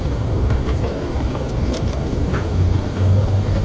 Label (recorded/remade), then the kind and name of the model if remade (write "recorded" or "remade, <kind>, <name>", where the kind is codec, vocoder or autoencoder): remade, codec, DAC